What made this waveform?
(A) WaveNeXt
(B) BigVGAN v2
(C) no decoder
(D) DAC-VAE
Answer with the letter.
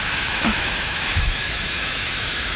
D